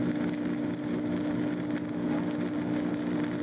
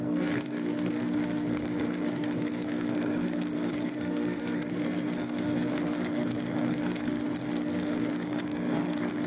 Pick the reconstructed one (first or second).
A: second